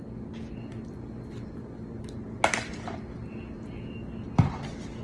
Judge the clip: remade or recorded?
recorded